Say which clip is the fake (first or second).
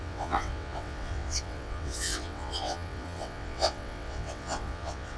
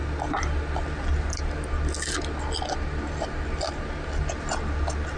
first